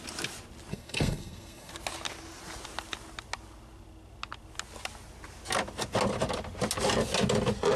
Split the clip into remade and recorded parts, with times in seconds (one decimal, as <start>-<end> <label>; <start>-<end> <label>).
0.0-0.7 recorded; 0.7-1.7 remade; 1.7-7.8 recorded